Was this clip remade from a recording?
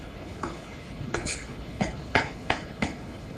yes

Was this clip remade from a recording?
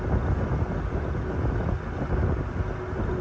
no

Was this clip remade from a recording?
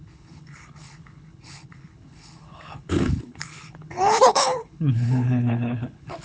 yes